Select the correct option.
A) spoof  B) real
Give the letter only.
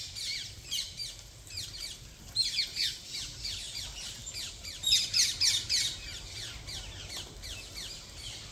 B